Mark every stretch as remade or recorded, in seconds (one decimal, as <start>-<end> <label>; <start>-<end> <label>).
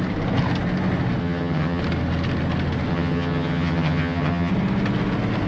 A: 0.0-1.2 recorded; 1.2-1.8 remade; 1.8-2.9 recorded; 2.9-4.5 remade; 4.5-5.5 recorded